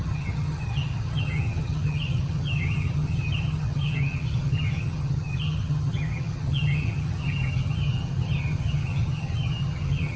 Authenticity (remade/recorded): remade